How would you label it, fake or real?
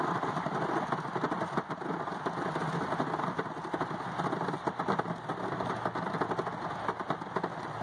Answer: real